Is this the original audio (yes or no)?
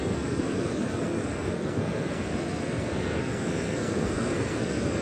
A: no